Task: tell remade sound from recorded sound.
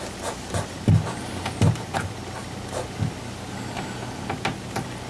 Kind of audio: recorded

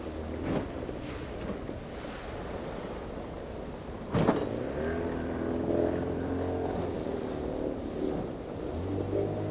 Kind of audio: recorded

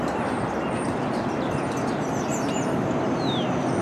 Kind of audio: recorded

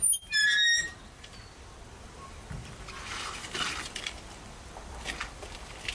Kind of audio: remade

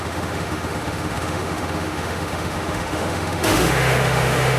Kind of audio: remade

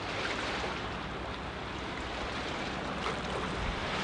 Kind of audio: recorded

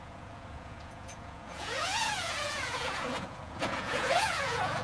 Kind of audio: remade